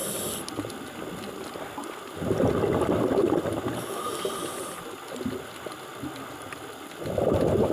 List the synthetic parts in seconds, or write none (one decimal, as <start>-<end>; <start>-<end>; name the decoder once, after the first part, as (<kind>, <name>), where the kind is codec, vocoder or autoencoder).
none